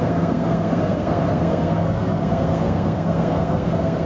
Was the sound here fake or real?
fake